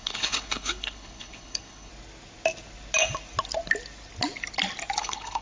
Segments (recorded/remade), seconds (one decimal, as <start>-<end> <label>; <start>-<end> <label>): 0.0-1.9 remade; 1.9-5.0 recorded; 5.0-5.4 remade